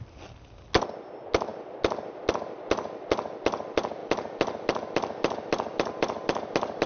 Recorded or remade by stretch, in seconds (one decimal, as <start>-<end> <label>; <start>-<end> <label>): 0.0-6.9 recorded